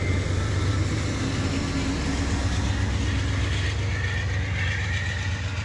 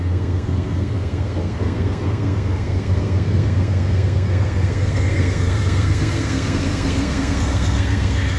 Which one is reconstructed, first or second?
second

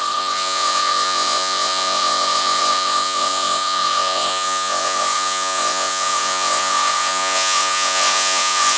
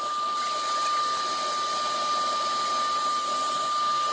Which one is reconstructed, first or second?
first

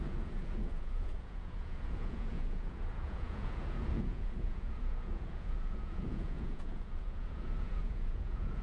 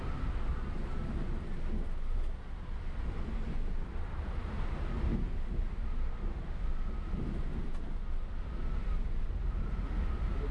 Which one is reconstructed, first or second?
first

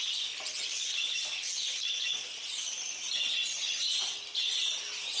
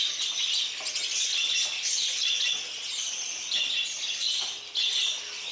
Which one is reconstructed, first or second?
first